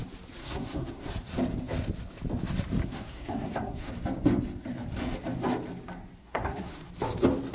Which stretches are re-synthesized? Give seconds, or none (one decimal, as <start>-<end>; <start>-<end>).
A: 0.4-1.1; 2.8-3.9; 6.2-6.9